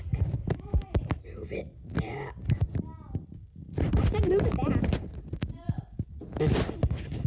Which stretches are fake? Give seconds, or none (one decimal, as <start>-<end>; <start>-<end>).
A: 0.4-1.2; 3.6-4.7